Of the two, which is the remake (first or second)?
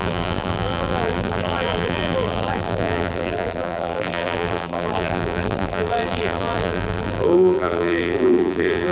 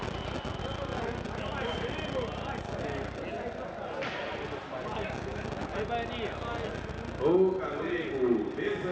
first